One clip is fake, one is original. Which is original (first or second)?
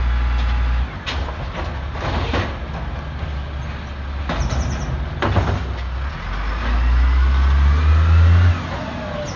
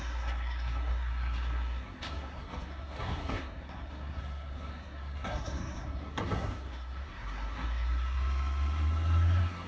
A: first